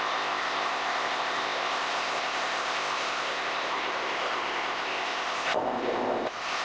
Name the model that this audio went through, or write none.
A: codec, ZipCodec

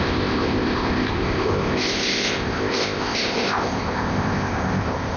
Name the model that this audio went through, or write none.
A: codec, ZipCodec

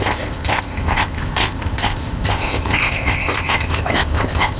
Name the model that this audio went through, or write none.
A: codec, ZipCodec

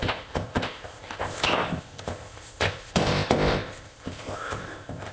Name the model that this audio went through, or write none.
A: codec, ZipCodec